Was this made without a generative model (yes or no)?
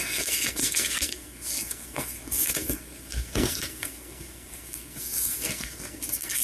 no